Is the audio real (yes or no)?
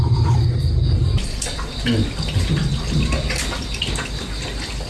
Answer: yes